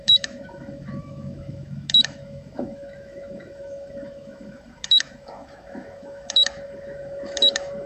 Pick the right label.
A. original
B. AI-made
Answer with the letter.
B